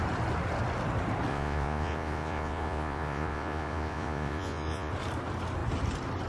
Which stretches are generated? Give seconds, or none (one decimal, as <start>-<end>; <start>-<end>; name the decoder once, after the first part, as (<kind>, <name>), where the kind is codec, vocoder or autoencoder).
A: 1.3-4.9 (vocoder, Vocos)